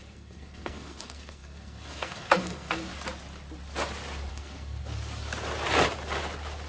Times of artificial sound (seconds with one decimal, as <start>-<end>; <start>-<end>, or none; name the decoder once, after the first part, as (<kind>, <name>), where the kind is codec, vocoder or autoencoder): 0.0-2.9 (codec, SNAC); 4.3-4.8